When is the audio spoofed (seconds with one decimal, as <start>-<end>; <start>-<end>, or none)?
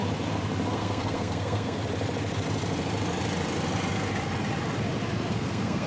0.7-1.8; 5.3-5.9